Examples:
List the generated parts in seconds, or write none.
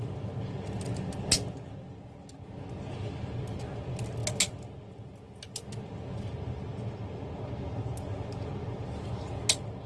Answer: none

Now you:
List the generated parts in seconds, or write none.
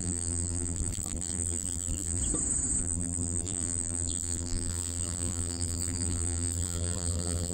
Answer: 0.0-2.2 (vocoder, BigVGAN v2); 2.8-7.5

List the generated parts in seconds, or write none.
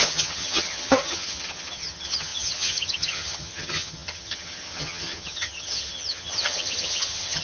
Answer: 0.0-7.4 (vocoder, HiFi-GAN)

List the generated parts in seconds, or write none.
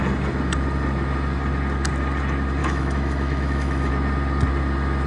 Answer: 2.6-3.9 (autoencoder, DAC-VAE)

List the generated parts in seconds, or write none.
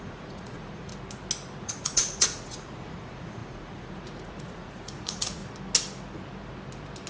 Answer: 0.0-0.9 (vocoder, Vocos); 1.6-5.4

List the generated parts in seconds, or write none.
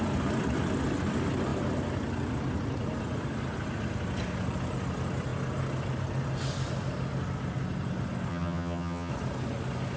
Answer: 8.3-9.1 (vocoder, HiFi-GAN)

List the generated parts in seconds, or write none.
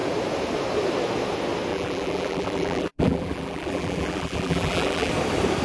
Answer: 1.7-5.1 (vocoder, BigVGAN v2)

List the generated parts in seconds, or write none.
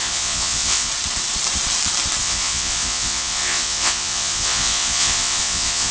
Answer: 0.0-0.9 (vocoder, Vocos); 2.2-5.9